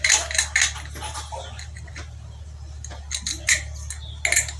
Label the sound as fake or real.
real